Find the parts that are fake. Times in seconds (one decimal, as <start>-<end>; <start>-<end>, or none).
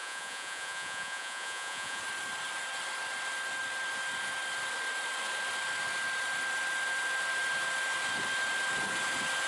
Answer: 0.0-2.0